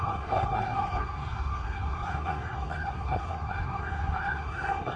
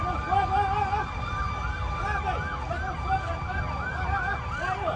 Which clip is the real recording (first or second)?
second